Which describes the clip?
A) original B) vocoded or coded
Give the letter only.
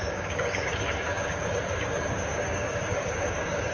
B